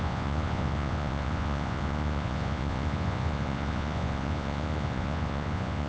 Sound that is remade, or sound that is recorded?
remade